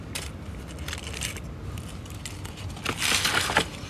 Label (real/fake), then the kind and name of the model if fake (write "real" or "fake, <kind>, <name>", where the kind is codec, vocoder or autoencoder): real